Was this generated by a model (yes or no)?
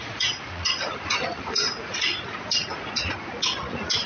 yes